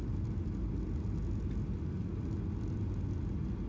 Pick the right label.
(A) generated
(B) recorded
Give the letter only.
B